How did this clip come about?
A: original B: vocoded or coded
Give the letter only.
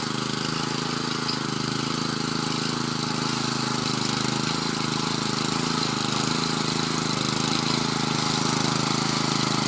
A